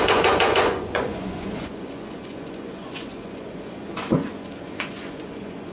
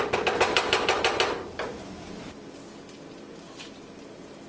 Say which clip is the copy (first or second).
first